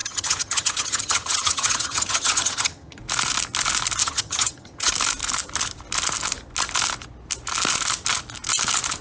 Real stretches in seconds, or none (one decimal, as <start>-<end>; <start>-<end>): 3.0-4.0; 4.9-9.0